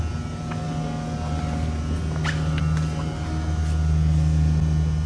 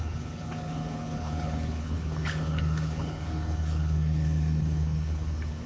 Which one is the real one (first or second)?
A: first